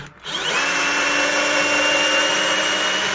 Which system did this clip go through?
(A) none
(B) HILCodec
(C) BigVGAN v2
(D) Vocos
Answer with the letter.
A